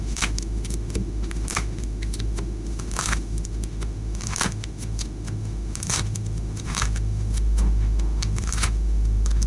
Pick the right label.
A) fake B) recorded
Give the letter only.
A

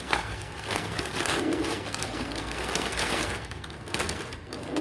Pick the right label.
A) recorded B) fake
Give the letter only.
B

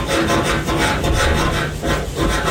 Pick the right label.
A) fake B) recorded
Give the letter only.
B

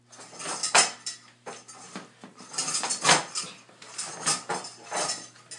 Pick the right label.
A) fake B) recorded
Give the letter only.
B